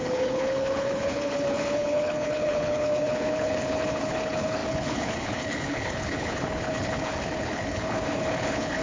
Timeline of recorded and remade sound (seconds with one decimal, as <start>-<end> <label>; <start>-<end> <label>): 0.0-8.8 remade